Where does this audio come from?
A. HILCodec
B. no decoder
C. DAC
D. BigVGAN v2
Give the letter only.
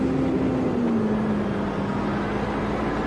B